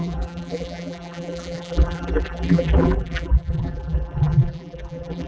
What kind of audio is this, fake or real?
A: fake